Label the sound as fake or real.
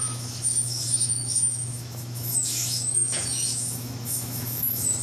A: fake